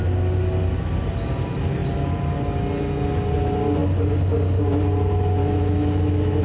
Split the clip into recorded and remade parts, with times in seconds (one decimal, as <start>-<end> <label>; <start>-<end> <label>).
0.0-5.4 recorded; 5.4-6.4 remade